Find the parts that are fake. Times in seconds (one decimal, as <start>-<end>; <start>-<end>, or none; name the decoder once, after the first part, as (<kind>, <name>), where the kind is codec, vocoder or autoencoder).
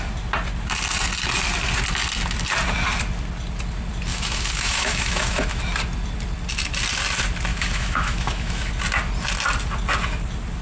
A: 4.1-5.6 (autoencoder, DAC-VAE); 7.5-8.7